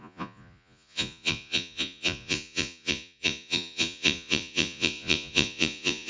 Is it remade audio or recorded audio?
remade